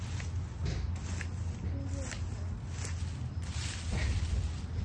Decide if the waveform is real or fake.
real